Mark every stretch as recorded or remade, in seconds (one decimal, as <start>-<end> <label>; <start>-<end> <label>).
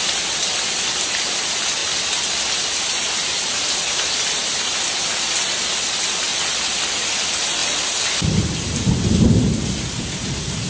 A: 0.0-10.7 recorded